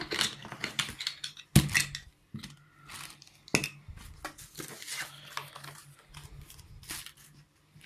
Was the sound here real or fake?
real